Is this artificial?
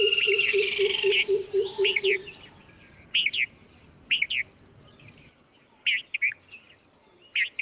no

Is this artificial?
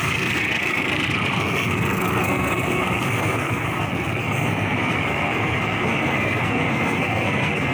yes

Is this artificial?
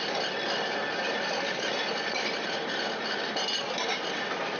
no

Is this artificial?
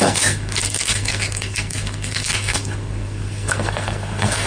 yes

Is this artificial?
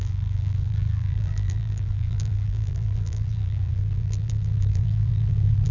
yes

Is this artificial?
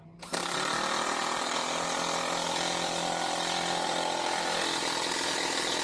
no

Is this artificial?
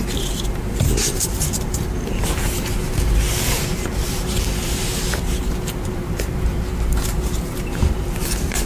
yes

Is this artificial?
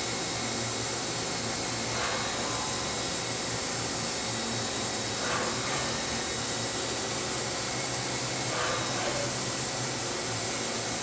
no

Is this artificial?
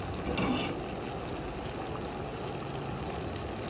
no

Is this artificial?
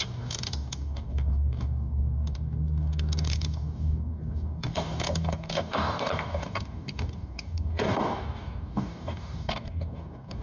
yes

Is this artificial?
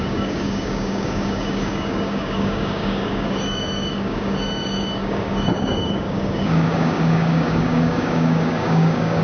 yes